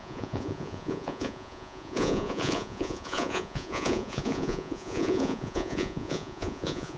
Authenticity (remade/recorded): remade